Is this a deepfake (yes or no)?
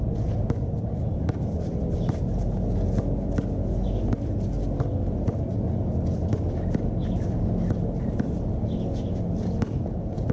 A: no